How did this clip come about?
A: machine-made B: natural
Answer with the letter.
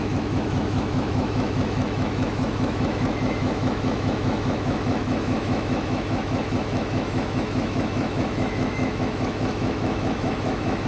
A